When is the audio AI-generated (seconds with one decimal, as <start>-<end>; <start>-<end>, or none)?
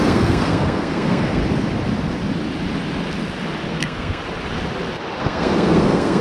0.0-1.4; 3.7-4.2; 5.2-6.2